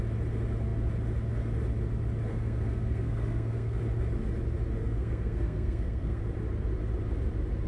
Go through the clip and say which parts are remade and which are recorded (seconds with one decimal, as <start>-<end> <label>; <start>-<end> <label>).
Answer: 0.0-2.3 recorded; 2.3-3.8 remade; 3.8-4.8 recorded; 4.8-6.2 remade; 6.2-7.7 recorded